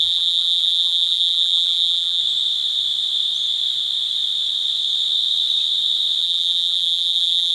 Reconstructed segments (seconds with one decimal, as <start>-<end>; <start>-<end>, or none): 0.0-2.2; 6.2-7.5

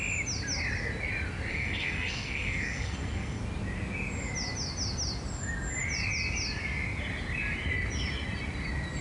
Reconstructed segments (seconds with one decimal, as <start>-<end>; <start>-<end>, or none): 1.5-3.4

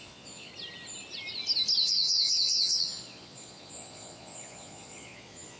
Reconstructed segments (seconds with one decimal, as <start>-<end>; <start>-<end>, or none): 0.0-0.5; 1.8-5.6

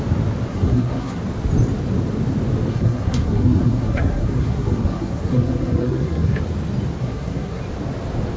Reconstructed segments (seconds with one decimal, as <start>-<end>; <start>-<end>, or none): 0.5-1.2; 2.7-6.4; 7.0-7.6

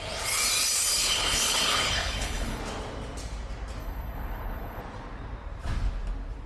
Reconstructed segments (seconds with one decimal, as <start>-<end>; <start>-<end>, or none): 0.9-2.6; 3.8-4.8

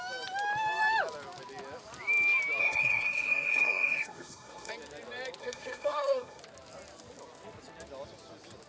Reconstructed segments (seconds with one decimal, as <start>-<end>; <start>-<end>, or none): 2.6-4.7; 5.4-6.4